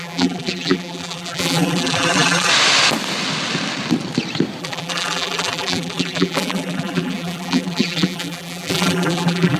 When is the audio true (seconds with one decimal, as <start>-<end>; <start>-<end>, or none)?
2.5-4.6